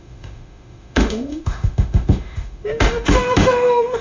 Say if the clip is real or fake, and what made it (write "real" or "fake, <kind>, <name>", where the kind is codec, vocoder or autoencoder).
fake, autoencoder, DAC-VAE